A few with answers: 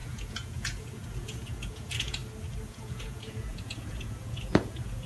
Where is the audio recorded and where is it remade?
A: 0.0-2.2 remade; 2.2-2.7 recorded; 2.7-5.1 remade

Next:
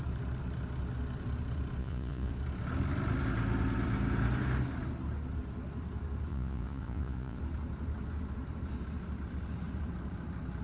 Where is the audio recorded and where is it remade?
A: 0.0-1.8 recorded; 1.8-2.3 remade; 2.3-6.3 recorded; 6.3-7.4 remade; 7.4-10.6 recorded

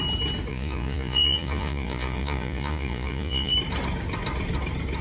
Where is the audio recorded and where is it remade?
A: 0.0-0.5 recorded; 0.5-3.5 remade; 3.5-5.0 recorded

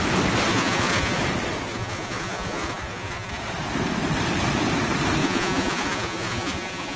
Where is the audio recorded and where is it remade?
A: 0.0-0.5 recorded; 0.5-1.2 remade; 1.2-1.7 recorded; 1.7-3.4 remade; 3.4-5.2 recorded; 5.2-7.0 remade